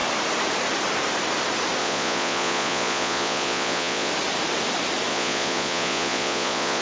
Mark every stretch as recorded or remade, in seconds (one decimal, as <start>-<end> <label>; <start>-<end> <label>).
0.0-1.8 recorded; 1.8-4.1 remade; 4.1-5.1 recorded; 5.1-6.8 remade